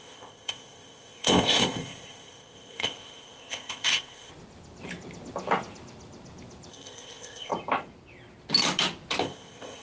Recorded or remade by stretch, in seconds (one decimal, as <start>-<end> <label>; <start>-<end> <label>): 0.0-4.3 remade; 4.3-6.7 recorded; 6.7-7.5 remade; 7.5-9.2 recorded; 9.2-9.8 remade

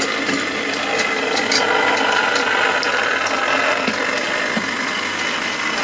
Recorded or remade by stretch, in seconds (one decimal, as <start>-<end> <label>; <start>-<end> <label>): 0.0-5.8 recorded

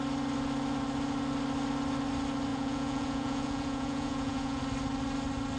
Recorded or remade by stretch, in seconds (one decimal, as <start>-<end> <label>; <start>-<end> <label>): 0.0-2.5 recorded; 2.5-4.6 remade; 4.6-5.6 recorded